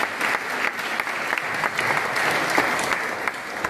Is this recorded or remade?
recorded